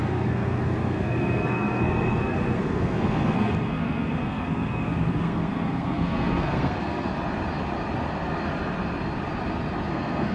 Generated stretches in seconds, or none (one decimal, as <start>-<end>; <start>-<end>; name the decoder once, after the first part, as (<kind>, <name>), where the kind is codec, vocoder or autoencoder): 0.0-7.1 (codec, SNAC); 9.9-10.3

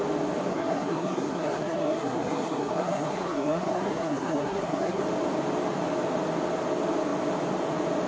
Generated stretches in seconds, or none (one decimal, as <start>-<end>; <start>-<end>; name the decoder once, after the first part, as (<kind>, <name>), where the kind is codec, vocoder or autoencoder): 0.5-5.0 (codec, SNAC)

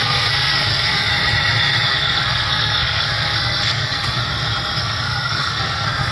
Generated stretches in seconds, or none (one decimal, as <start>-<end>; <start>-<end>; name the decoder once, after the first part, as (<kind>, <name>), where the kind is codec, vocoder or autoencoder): 0.0-1.1 (codec, SNAC); 1.9-4.2; 4.8-6.1

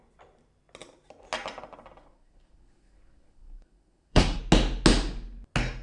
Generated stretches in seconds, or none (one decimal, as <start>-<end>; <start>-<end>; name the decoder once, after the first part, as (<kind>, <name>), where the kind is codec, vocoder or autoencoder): 2.0-4.4 (codec, SNAC)

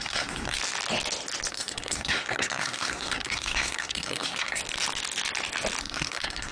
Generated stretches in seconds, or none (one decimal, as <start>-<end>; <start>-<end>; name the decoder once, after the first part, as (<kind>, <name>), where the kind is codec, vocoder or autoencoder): 0.0-0.6 (codec, SNAC); 1.5-4.6; 5.8-6.5